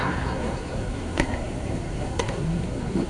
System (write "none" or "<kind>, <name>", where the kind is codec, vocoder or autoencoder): codec, SNAC